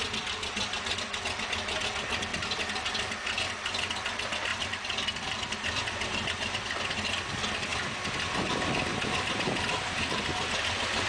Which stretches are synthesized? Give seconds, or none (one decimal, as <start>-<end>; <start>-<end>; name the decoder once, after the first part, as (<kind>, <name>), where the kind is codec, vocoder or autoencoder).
2.3-3.5 (vocoder, BigVGAN v2); 4.5-5.5